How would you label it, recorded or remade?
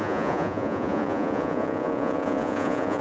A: remade